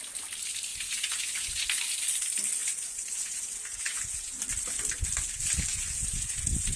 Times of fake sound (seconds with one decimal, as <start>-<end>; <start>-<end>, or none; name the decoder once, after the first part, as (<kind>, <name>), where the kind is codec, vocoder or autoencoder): 0.7-1.8 (vocoder, Vocos); 2.6-4.4; 5.7-6.8